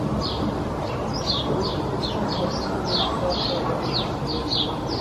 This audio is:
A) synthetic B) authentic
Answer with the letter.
B